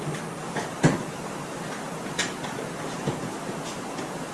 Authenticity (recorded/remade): recorded